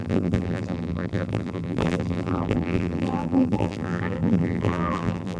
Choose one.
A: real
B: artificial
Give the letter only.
B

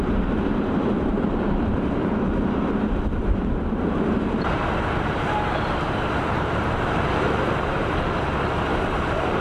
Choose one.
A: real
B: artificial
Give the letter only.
B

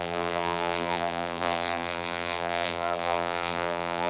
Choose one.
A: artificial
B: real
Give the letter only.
A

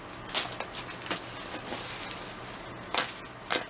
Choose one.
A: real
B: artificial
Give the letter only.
A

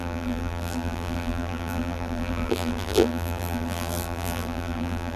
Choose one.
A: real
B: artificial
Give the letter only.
B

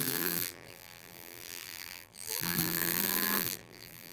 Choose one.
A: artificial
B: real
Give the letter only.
A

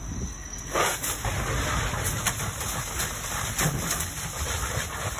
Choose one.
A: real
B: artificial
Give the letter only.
A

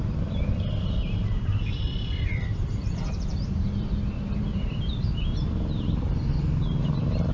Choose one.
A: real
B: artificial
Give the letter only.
B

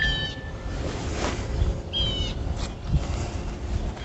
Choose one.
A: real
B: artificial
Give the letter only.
A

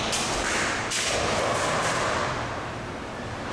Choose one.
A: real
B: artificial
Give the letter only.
B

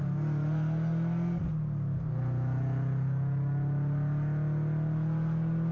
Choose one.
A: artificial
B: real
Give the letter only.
B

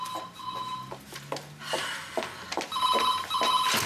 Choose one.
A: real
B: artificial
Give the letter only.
A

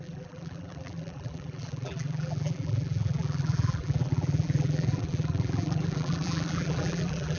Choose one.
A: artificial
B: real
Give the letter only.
A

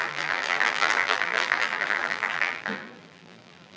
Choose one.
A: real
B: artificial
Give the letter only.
B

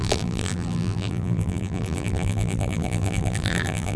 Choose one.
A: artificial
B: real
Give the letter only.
A